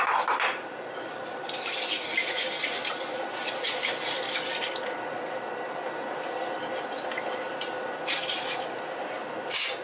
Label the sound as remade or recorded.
remade